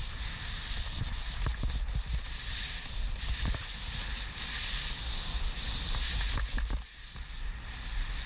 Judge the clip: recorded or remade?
recorded